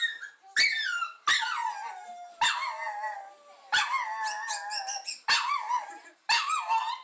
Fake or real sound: real